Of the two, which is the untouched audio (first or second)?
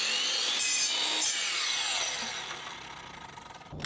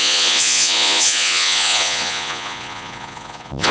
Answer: first